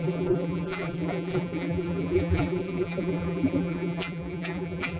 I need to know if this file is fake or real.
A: fake